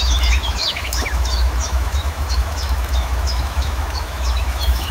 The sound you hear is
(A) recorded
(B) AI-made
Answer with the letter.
B